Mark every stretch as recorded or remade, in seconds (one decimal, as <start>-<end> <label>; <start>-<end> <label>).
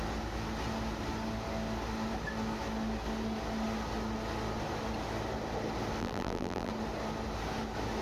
0.0-6.0 recorded; 6.0-6.7 remade; 6.7-8.0 recorded